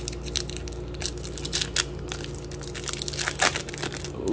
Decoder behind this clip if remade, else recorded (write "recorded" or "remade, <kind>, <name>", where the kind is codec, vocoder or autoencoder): recorded